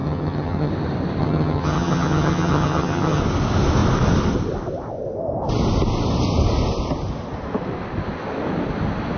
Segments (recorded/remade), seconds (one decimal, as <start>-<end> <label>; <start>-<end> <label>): 0.0-0.7 remade; 0.7-1.2 recorded; 1.2-3.2 remade; 3.2-9.2 recorded